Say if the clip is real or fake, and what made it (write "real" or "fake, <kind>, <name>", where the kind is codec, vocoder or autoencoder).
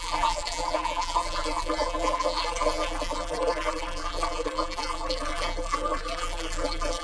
fake, vocoder, BigVGAN v2